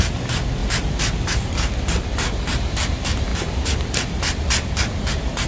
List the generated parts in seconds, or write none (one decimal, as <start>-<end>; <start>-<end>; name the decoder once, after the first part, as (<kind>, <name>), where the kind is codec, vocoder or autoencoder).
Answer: 0.6-2.3 (vocoder, BigVGAN v2); 3.3-4.7

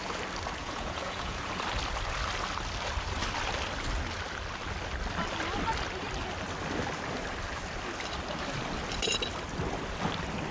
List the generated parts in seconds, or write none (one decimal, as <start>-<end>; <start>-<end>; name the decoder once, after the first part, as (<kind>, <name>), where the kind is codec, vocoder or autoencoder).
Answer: 0.6-1.4 (vocoder, Vocos)

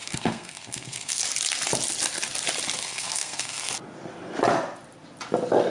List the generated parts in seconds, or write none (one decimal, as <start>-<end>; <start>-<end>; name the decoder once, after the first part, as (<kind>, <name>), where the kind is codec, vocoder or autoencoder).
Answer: 0.0-1.2 (codec, SNAC); 2.8-3.7

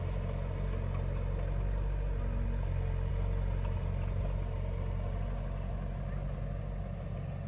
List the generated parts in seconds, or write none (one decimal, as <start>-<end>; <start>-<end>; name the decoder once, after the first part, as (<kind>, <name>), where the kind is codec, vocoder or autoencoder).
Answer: none

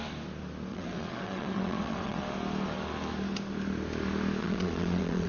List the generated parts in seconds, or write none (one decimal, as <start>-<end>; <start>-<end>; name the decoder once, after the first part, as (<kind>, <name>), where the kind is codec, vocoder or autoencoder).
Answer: 0.7-2.2 (vocoder, WaveNeXt); 4.4-5.3